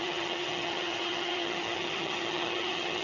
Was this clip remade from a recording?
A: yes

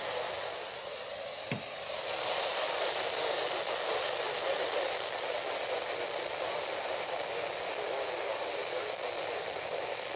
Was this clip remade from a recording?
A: no